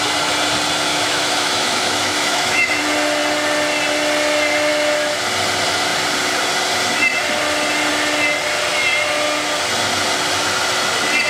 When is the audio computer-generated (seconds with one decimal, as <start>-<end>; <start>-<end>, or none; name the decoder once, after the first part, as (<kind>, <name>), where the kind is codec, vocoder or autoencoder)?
0.9-2.8 (autoencoder, DAC-VAE)